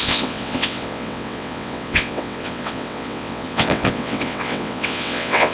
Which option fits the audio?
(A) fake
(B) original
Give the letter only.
A